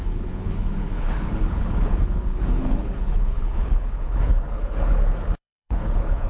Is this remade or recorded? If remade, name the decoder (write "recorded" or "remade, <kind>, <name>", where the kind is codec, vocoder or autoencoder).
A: remade, codec, HILCodec